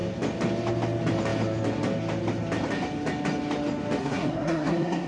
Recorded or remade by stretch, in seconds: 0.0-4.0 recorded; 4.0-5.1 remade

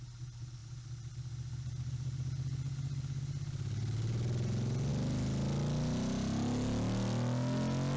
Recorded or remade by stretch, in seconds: 0.0-8.0 recorded